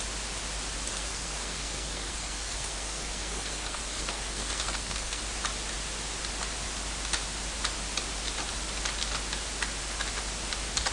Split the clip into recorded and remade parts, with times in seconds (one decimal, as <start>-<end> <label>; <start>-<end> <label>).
0.0-0.9 recorded; 0.9-5.2 remade; 5.2-10.9 recorded